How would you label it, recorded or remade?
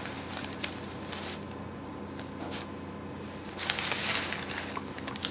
recorded